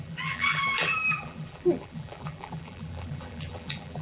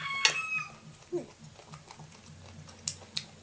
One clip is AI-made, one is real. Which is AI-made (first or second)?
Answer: first